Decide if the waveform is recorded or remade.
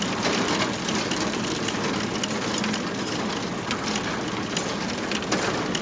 recorded